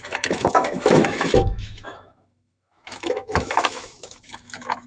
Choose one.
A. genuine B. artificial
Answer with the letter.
B